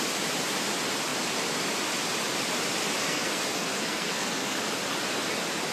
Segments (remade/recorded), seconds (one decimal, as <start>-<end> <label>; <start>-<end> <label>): 0.0-3.0 recorded; 3.0-4.6 remade; 4.6-5.7 recorded